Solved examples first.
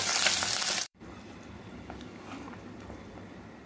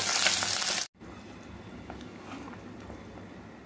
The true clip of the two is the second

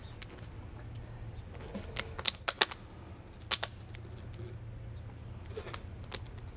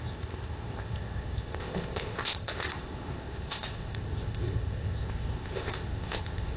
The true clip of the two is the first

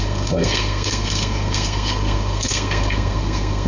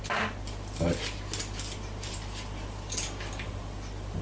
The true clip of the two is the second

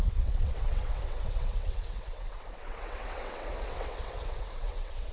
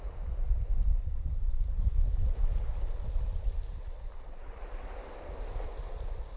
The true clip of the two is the second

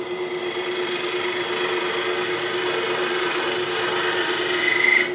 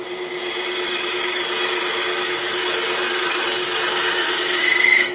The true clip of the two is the first